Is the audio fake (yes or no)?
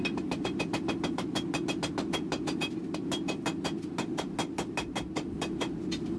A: no